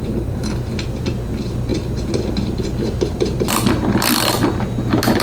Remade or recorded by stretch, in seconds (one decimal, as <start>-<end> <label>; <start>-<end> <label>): 0.0-5.2 recorded